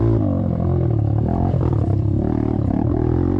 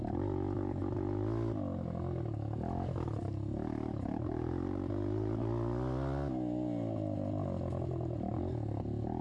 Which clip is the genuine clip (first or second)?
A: second